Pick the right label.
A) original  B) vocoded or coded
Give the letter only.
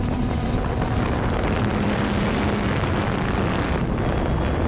A